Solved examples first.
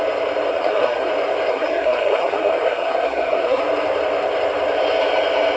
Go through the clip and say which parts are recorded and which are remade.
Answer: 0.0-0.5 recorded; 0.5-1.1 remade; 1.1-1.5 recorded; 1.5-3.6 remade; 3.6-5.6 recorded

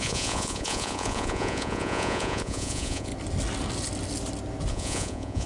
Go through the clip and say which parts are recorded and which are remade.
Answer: 0.0-3.1 remade; 3.1-4.7 recorded; 4.7-5.5 remade

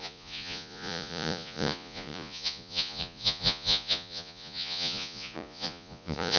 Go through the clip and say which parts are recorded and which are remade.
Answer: 0.0-6.4 remade

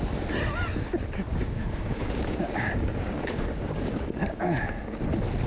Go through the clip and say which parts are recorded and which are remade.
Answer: 0.0-1.3 recorded; 1.3-4.6 remade; 4.6-5.5 recorded

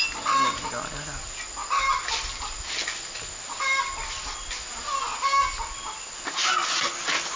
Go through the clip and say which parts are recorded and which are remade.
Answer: 0.0-7.4 recorded

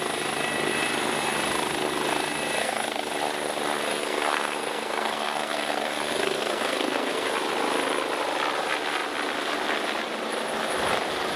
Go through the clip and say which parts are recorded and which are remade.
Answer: 0.0-2.6 recorded; 2.6-3.1 remade; 3.1-3.9 recorded; 3.9-7.3 remade; 7.3-11.4 recorded

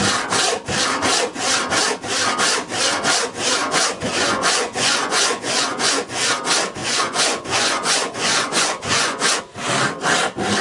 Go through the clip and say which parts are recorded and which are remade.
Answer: 0.0-3.6 recorded; 3.6-6.3 remade; 6.3-6.8 recorded; 6.8-9.4 remade; 9.4-10.6 recorded

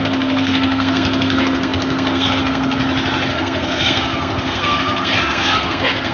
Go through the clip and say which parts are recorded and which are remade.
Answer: 0.0-2.8 remade; 2.8-3.3 recorded; 3.3-6.1 remade